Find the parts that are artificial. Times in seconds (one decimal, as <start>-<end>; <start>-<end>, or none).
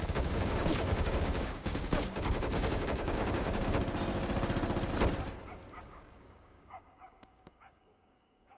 0.0-3.6; 5.8-8.6